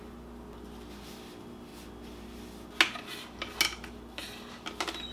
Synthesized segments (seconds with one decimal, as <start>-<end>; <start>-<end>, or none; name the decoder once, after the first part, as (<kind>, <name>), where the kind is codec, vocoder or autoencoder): none